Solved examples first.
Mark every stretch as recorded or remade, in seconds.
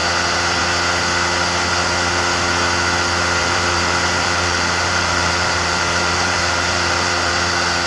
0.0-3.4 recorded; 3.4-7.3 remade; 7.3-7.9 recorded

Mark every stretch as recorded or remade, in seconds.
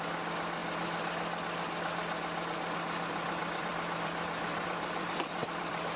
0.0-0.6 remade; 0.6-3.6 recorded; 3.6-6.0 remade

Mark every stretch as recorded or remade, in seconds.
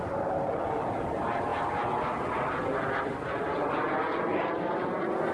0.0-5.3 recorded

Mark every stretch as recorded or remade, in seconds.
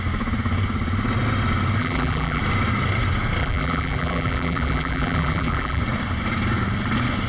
0.0-1.8 recorded; 1.8-2.4 remade; 2.4-3.4 recorded; 3.4-5.8 remade; 5.8-7.3 recorded